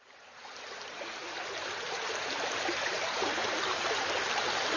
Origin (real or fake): fake